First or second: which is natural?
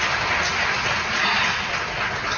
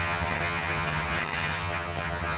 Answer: first